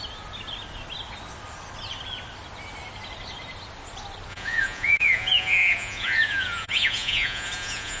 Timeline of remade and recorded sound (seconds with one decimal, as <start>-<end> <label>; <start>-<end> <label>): 0.0-4.3 recorded; 4.3-8.0 remade